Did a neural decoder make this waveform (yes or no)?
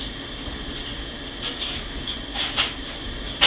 no